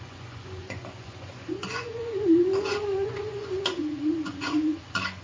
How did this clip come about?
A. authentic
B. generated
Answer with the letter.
B